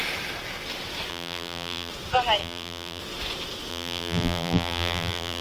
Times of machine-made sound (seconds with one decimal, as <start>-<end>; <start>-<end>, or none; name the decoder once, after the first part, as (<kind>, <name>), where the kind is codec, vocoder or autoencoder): 1.1-1.9 (vocoder, BigVGAN v2); 2.4-3.0; 3.7-5.4